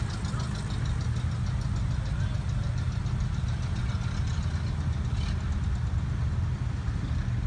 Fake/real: real